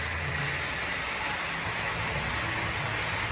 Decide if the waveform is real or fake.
real